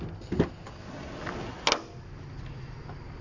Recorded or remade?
recorded